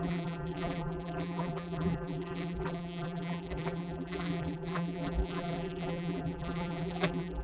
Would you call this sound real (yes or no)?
no